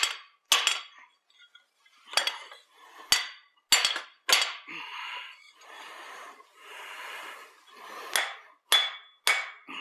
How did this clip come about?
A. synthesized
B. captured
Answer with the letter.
B